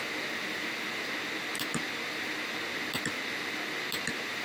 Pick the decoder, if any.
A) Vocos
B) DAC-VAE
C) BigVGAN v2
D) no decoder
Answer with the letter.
D